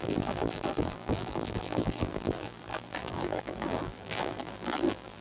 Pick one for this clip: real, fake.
fake